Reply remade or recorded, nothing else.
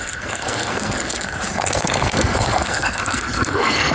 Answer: remade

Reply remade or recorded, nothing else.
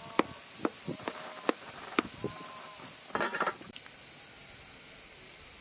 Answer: recorded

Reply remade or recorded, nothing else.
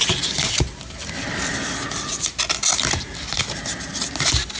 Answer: recorded